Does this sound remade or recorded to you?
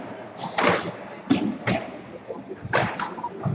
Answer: recorded